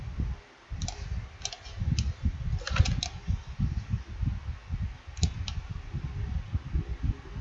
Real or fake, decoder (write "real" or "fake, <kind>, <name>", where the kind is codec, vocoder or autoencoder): real